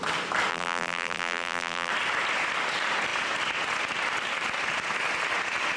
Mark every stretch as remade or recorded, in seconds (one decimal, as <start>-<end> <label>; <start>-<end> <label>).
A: 0.0-0.5 recorded; 0.5-1.9 remade; 1.9-5.8 recorded